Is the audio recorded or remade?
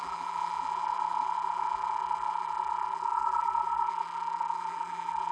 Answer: remade